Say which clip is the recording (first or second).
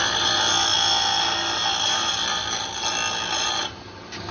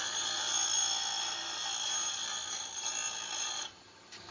first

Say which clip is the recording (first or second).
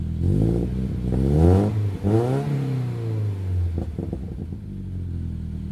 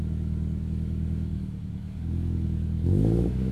first